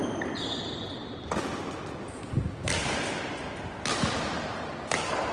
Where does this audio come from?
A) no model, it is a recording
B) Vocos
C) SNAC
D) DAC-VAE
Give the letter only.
A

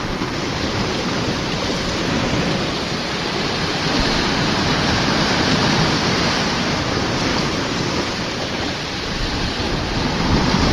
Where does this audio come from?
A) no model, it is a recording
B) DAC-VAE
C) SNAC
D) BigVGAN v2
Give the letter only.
D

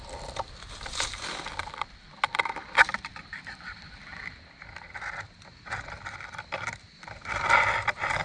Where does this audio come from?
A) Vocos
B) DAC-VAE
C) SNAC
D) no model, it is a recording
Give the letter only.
D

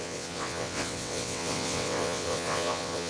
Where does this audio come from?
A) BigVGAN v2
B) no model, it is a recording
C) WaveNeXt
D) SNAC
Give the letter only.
C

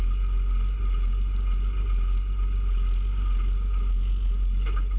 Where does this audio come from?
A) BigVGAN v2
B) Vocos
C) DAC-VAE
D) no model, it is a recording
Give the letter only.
D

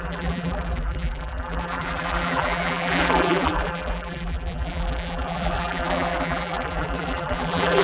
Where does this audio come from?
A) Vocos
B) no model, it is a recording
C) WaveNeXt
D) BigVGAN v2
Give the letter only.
D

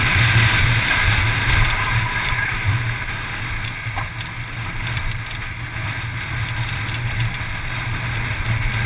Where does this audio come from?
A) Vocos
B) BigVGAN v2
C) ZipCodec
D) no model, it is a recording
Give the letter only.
D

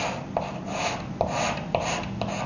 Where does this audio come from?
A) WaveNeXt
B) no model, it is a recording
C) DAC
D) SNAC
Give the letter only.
B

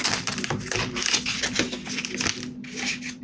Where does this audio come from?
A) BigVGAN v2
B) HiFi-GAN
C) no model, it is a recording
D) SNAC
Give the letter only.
C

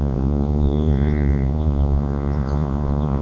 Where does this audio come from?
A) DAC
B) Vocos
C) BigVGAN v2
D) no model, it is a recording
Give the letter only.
B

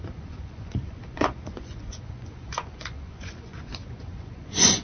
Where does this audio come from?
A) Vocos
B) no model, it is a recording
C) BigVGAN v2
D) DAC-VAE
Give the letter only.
A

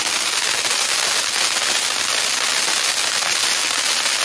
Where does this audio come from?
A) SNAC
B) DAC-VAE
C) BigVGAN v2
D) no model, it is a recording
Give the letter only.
D